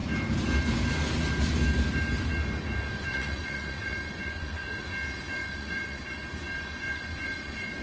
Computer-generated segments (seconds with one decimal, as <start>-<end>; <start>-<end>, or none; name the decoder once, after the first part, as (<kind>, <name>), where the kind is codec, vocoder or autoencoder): 3.1-4.9 (vocoder, Vocos); 5.4-7.8